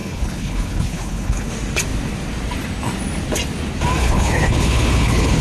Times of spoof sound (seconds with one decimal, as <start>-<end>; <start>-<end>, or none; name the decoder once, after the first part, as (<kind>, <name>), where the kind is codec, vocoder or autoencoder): 0.0-1.5 (codec, HILCodec); 4.0-5.4

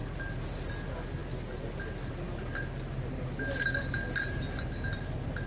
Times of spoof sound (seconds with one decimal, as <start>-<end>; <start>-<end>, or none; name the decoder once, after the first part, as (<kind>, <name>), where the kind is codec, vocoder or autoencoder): none